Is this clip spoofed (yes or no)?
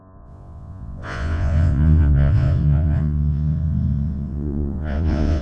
yes